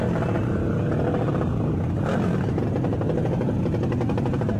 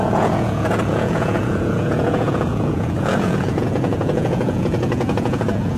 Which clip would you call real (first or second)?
first